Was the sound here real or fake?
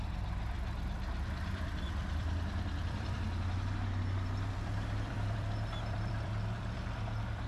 fake